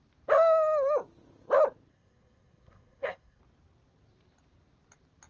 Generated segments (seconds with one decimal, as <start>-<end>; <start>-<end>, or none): 1.9-3.4